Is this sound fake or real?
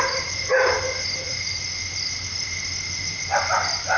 real